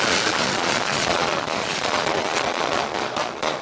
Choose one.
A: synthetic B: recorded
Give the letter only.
A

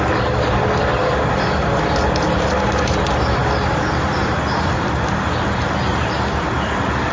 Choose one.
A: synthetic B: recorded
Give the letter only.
B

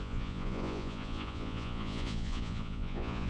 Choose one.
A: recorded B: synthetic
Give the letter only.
B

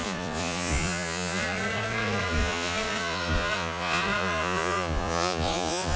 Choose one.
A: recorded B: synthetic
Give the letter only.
B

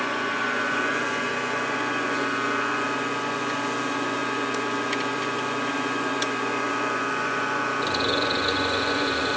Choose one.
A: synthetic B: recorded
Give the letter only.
A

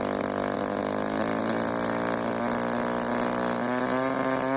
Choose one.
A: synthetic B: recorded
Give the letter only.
B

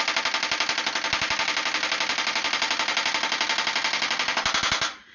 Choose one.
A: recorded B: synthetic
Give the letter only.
A